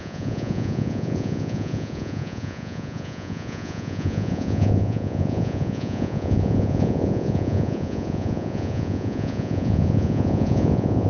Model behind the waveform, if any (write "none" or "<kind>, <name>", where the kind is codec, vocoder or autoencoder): vocoder, Vocos